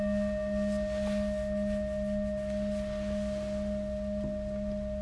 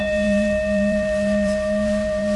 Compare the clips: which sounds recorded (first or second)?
first